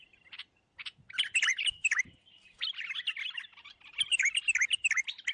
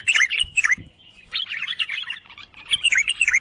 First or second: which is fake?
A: second